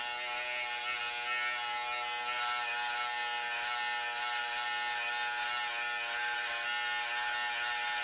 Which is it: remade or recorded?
recorded